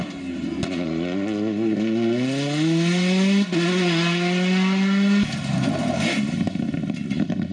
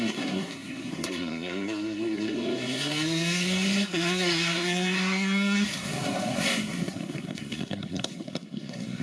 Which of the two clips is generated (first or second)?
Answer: second